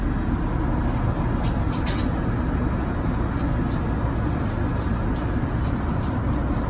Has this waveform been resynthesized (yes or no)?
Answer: no